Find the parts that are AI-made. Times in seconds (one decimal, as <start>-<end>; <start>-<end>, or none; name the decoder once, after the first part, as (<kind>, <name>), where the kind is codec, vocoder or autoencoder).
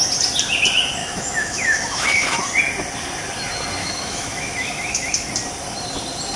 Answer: 1.0-2.4 (autoencoder, DAC-VAE); 3.8-5.3